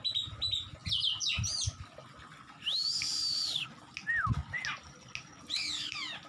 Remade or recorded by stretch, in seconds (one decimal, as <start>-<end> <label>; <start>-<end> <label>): 0.0-0.8 recorded; 0.8-1.4 remade; 1.4-6.3 recorded